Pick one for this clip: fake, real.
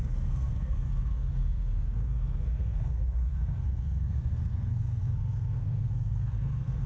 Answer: fake